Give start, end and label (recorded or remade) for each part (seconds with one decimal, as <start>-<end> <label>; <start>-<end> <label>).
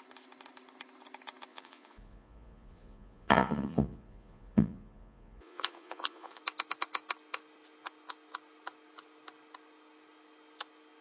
0.0-1.5 recorded; 1.5-6.4 remade; 6.4-11.0 recorded